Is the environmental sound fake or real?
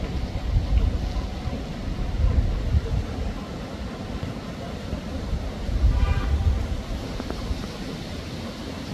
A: real